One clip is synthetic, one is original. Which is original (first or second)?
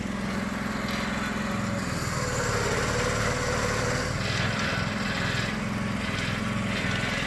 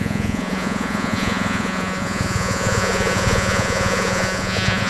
first